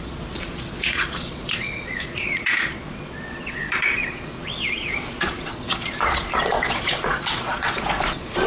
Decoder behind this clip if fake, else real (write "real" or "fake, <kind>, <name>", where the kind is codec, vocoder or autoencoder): fake, vocoder, Vocos